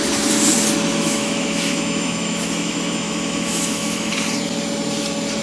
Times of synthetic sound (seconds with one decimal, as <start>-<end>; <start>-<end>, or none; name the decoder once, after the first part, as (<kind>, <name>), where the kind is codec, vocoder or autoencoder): 0.9-4.1 (autoencoder, DAC-VAE)